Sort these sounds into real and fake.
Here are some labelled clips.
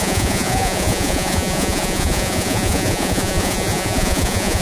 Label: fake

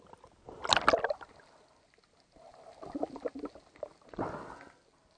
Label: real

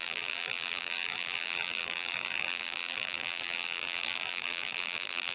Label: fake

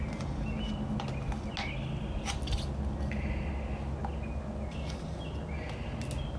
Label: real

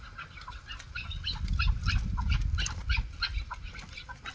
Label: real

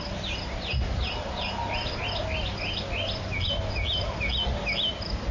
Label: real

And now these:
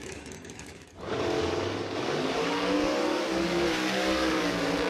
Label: fake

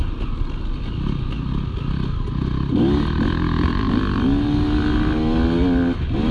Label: real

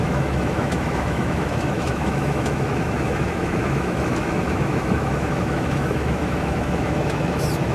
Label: fake